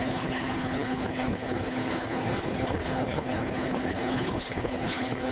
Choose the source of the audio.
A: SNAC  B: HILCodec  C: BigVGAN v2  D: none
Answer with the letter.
B